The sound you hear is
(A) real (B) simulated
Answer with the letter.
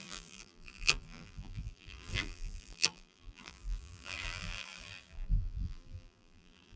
B